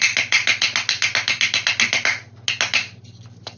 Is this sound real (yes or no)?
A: yes